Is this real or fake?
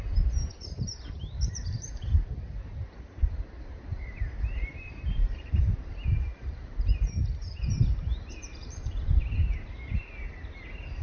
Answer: fake